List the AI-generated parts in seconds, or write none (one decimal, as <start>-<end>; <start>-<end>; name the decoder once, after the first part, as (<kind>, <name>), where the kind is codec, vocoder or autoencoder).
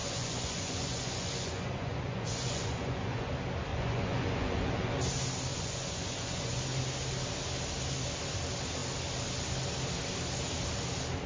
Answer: 0.0-3.3 (vocoder, Vocos); 3.7-4.9; 5.5-6.6